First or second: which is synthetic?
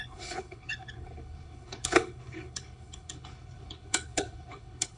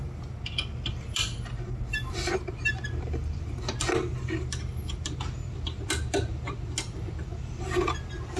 first